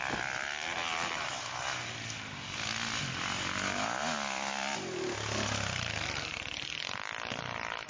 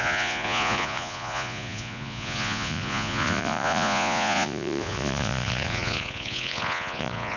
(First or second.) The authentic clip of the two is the first